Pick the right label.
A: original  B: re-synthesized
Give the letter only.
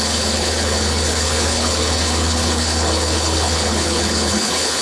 B